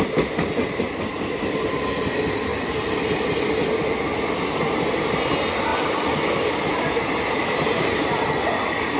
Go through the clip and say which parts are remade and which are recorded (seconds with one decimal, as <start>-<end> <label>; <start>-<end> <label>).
0.0-2.5 recorded; 2.5-3.4 remade; 3.4-5.7 recorded; 5.7-7.3 remade; 7.3-9.0 recorded